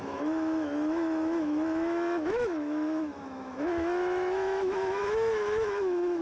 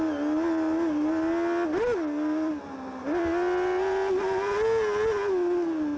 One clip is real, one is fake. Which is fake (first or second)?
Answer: first